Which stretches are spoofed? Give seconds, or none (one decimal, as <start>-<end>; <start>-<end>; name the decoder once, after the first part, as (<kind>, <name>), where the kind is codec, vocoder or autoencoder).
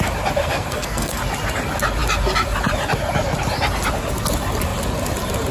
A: 0.4-1.2 (codec, SNAC)